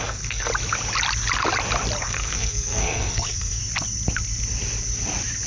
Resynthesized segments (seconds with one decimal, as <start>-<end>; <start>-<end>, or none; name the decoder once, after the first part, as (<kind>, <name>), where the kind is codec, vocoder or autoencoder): 0.0-0.5 (codec, SNAC); 2.0-3.6